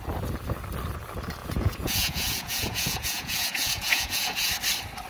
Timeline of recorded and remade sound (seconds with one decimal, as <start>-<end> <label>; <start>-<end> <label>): 0.0-1.4 recorded; 1.4-4.5 remade; 4.5-5.1 recorded